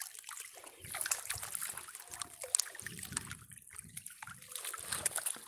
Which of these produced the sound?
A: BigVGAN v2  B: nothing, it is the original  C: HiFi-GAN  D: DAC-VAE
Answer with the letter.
B